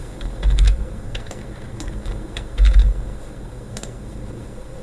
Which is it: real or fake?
fake